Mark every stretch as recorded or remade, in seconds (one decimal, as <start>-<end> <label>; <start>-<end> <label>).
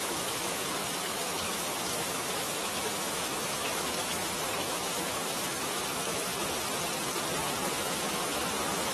0.0-6.3 remade; 6.3-7.7 recorded; 7.7-8.9 remade